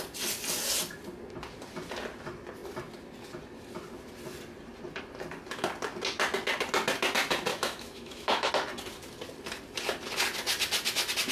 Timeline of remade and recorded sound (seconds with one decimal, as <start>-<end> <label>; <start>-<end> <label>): 0.0-7.5 recorded; 7.5-8.5 remade; 8.5-11.3 recorded

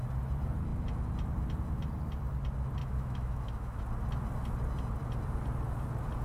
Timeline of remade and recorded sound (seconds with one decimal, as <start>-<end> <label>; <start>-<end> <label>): 0.0-2.8 recorded; 2.8-3.8 remade; 3.8-6.2 recorded